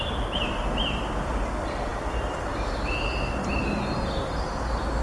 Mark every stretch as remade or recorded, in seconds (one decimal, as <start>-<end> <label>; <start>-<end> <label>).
0.0-5.0 recorded